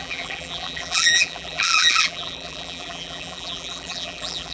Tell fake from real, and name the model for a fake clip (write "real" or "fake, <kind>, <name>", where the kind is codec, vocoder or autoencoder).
fake, vocoder, BigVGAN v2